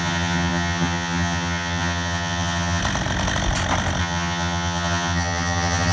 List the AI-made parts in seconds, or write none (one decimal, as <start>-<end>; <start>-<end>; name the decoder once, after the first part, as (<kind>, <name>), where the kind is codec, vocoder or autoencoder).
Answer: 0.0-2.8 (vocoder, HiFi-GAN); 4.0-5.9